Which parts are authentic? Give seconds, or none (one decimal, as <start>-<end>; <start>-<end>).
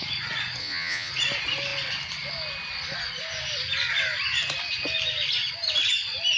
0.0-0.6; 1.1-6.4